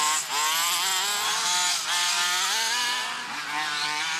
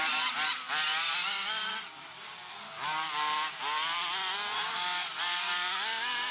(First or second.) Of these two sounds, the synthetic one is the second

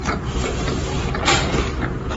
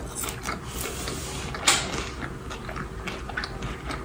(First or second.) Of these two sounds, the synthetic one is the first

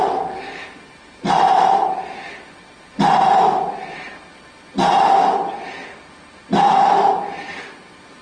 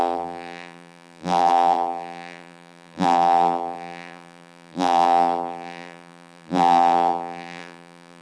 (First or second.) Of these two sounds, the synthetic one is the second